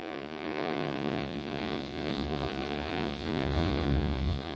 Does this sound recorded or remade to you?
remade